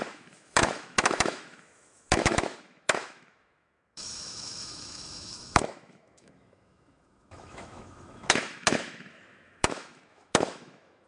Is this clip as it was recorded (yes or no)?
no